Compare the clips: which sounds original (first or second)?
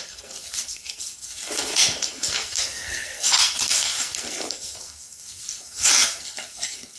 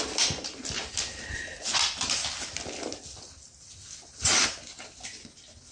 second